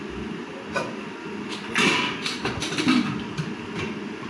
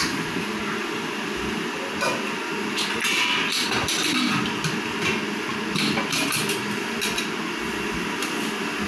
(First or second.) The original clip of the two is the second